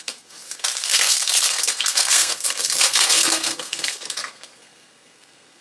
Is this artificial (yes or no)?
yes